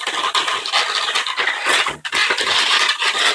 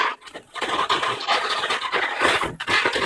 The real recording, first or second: first